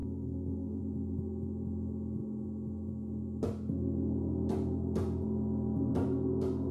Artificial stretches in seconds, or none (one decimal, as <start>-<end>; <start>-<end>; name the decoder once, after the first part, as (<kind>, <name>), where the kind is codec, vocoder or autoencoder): 0.0-0.8 (codec, SNAC)